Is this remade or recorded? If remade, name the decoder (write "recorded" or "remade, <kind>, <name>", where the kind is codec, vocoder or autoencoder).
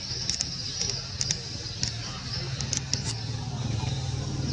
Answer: recorded